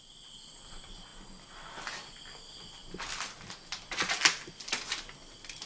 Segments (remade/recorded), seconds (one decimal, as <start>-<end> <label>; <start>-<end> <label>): 0.0-5.7 recorded